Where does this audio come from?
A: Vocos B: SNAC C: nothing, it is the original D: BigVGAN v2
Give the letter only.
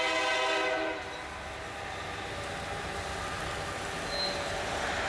C